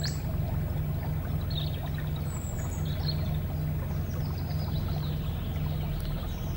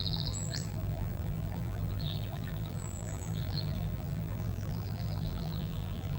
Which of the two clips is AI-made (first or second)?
second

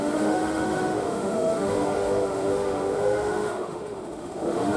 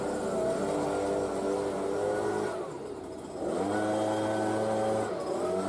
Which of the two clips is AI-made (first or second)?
first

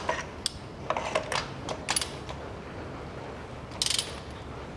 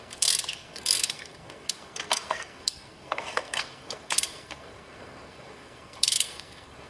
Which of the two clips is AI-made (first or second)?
second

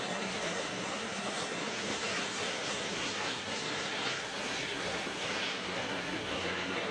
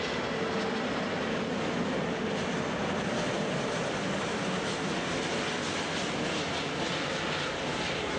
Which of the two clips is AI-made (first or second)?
first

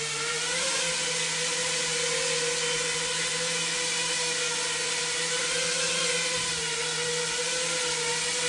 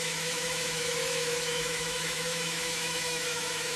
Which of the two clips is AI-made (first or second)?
second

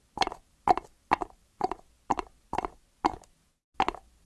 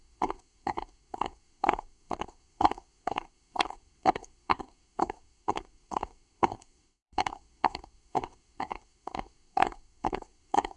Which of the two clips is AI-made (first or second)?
second